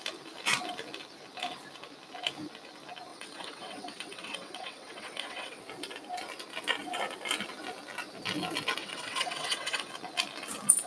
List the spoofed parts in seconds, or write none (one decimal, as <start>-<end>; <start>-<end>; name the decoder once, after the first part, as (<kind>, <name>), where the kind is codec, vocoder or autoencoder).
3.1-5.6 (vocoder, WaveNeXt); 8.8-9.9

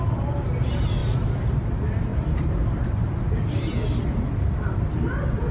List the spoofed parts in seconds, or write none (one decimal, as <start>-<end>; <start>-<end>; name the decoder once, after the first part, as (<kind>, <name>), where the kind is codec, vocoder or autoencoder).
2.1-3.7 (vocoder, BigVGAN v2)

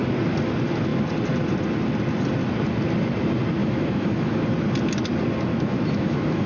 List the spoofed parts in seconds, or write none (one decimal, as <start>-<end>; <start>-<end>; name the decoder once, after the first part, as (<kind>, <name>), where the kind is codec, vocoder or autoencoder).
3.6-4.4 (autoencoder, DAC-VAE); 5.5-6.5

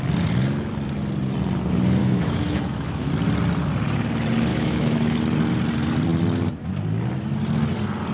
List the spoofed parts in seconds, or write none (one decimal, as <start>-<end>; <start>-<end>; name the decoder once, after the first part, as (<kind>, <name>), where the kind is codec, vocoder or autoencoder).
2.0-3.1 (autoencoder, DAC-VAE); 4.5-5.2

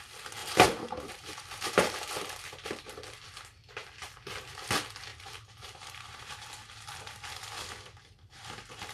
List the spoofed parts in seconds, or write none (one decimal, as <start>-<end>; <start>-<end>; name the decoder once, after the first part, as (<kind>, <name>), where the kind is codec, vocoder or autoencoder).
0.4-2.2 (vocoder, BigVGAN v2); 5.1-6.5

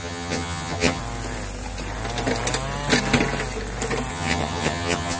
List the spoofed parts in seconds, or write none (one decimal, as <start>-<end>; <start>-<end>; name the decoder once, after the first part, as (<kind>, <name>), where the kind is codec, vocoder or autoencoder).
0.0-1.0 (vocoder, HiFi-GAN); 4.1-5.2

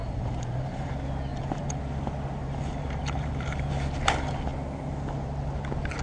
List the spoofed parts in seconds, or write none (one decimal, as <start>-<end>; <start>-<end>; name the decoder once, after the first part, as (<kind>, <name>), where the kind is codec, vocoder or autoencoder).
0.0-0.9 (vocoder, BigVGAN v2); 1.3-1.8; 2.4-3.7

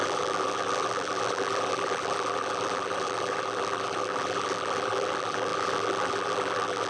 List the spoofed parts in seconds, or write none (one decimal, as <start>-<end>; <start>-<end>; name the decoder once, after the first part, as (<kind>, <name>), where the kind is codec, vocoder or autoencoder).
0.0-6.9 (vocoder, BigVGAN v2)